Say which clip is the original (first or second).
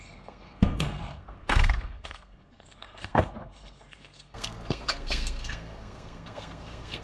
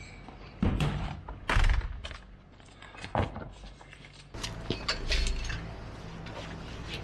second